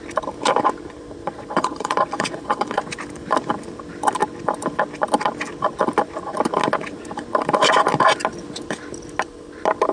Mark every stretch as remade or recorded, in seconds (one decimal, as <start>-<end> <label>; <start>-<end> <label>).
0.0-1.2 recorded; 1.2-2.8 remade; 2.8-9.9 recorded